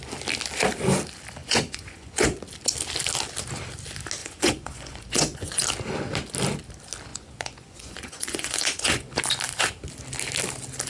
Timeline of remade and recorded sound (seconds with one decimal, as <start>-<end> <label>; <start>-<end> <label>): 0.0-1.4 recorded; 1.4-2.4 remade; 2.4-4.2 recorded; 4.2-5.6 remade; 5.6-7.1 recorded; 7.1-9.2 remade; 9.2-10.9 recorded